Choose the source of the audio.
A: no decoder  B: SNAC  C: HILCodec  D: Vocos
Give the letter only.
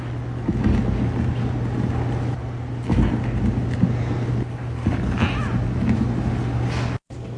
A